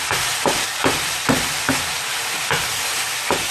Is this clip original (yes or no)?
no